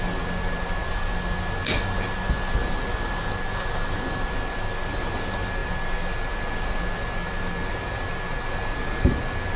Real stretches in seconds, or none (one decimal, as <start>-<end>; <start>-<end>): 0.0-9.6

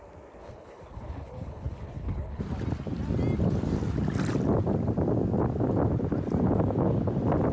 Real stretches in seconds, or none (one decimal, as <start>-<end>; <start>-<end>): 0.0-0.4; 2.4-7.5

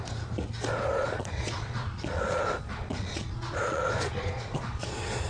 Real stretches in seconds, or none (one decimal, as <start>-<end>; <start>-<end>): 0.0-1.0; 2.4-2.8

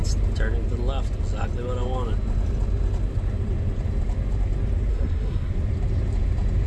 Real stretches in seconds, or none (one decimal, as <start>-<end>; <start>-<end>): 0.0-4.9; 5.5-6.7